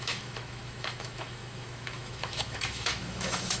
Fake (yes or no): yes